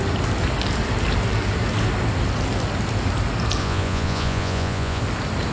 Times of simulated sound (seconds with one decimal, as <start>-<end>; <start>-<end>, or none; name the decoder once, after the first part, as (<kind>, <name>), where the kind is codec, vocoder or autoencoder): 3.6-5.0 (vocoder, Vocos)